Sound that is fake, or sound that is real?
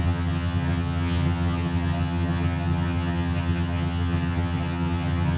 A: fake